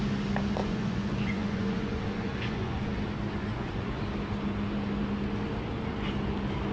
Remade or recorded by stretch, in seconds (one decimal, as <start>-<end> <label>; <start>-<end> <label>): 0.0-0.6 recorded; 0.6-2.9 remade; 2.9-3.4 recorded; 3.4-4.0 remade; 4.0-6.7 recorded